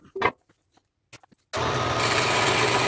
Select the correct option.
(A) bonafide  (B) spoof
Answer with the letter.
A